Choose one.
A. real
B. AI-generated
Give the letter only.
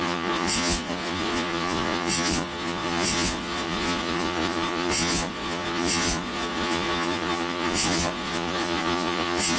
B